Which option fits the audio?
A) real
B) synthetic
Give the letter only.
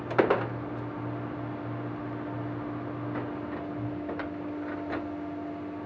A